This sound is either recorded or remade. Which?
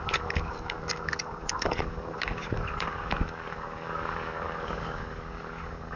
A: remade